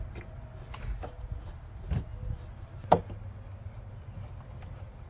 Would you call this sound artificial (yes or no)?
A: no